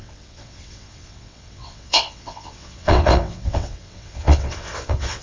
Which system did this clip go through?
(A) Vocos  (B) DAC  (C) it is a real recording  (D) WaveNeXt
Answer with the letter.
D